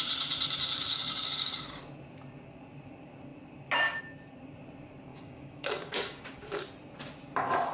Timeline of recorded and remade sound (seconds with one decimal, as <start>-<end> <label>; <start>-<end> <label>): 0.0-0.9 recorded; 0.9-1.6 remade; 1.6-5.1 recorded; 5.1-6.6 remade; 6.6-7.7 recorded